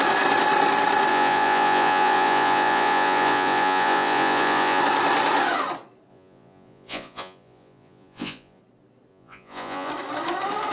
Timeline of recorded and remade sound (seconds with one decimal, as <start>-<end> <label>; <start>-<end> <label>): 0.0-1.1 recorded; 1.1-4.8 remade; 4.8-6.1 recorded; 6.1-8.6 remade; 8.6-9.1 recorded; 9.1-9.9 remade; 9.9-10.7 recorded

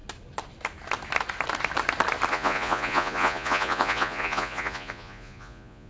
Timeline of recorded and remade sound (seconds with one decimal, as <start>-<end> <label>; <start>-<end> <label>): 0.0-2.3 recorded; 2.3-5.9 remade

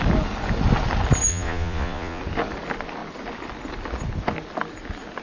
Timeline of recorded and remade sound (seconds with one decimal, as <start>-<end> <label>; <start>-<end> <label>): 0.0-1.3 recorded; 1.3-2.2 remade; 2.2-5.2 recorded

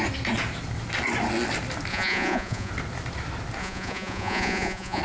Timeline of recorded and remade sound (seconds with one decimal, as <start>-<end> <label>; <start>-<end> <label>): 0.0-1.9 recorded; 1.9-2.7 remade; 2.7-3.6 recorded; 3.6-5.0 remade